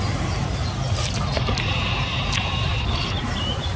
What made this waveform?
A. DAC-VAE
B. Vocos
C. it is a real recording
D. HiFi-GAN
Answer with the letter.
C